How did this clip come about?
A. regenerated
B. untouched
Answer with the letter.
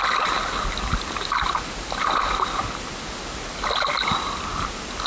B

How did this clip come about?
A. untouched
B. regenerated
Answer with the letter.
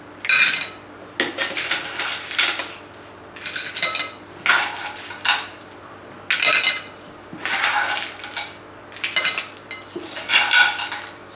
A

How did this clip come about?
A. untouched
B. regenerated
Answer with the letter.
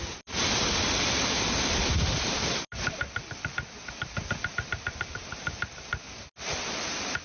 A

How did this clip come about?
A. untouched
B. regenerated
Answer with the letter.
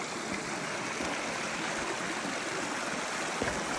A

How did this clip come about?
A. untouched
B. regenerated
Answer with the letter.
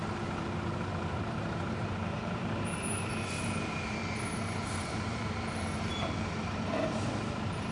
B